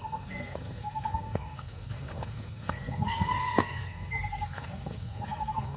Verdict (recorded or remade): remade